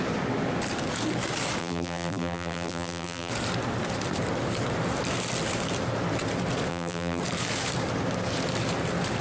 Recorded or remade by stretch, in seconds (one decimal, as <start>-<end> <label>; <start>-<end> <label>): 0.0-1.6 recorded; 1.6-3.3 remade; 3.3-6.7 recorded; 6.7-7.2 remade; 7.2-9.2 recorded